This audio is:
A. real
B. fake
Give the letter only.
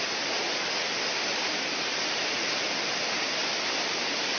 A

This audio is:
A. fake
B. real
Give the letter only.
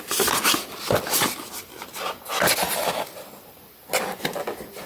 B